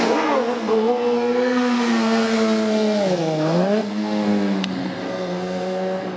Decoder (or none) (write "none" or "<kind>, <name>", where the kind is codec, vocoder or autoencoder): codec, SNAC